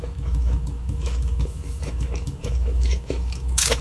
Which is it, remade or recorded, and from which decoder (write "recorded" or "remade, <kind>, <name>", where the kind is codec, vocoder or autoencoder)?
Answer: remade, autoencoder, DAC-VAE